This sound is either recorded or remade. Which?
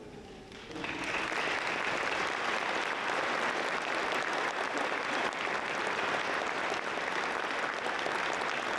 recorded